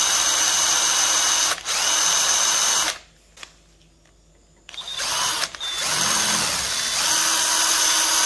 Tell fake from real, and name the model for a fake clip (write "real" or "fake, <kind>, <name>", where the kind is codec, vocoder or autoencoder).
real